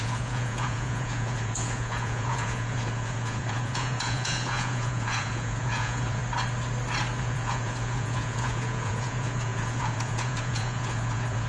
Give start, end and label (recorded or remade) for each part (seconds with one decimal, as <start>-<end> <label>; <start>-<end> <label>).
0.0-6.2 remade; 6.2-7.2 recorded; 7.2-11.5 remade